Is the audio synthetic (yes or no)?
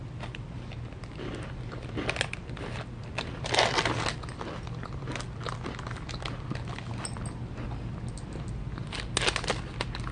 no